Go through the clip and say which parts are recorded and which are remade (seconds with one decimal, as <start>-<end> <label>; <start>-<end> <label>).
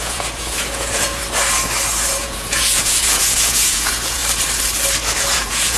0.0-1.2 remade; 1.2-2.2 recorded; 2.2-4.2 remade; 4.2-5.2 recorded; 5.2-5.8 remade